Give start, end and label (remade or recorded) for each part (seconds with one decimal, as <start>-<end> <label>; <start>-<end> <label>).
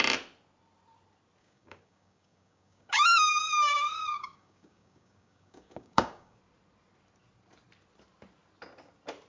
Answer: 0.0-1.4 recorded; 1.4-6.4 remade; 6.4-9.3 recorded